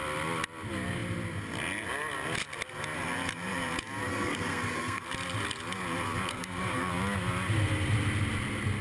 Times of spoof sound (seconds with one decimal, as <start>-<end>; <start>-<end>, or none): 4.1-5.0; 6.3-6.9